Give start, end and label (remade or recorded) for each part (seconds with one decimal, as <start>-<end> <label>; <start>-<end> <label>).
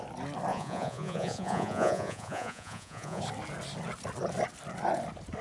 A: 0.0-0.5 recorded; 0.5-3.2 remade; 3.2-5.4 recorded